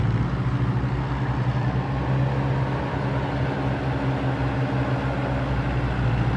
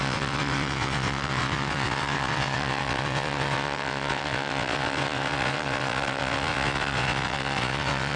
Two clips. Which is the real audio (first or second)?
first